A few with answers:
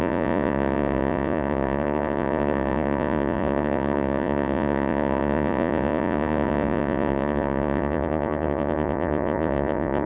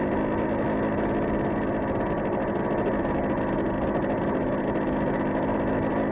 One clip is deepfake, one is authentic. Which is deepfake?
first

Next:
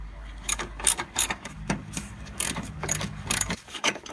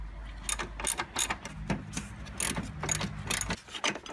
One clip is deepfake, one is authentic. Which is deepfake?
first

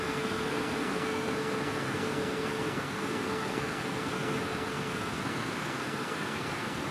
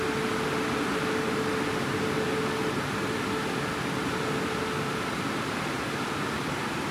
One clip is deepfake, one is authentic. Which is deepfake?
first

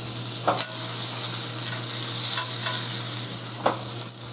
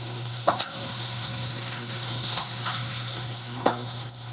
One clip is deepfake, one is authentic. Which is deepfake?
second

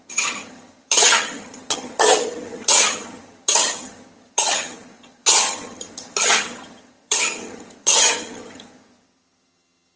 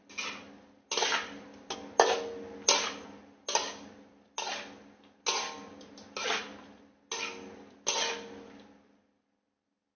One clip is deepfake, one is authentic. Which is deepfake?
first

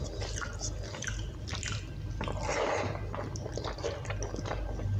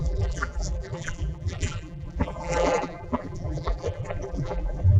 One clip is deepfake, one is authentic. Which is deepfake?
second